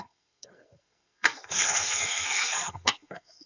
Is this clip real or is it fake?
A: fake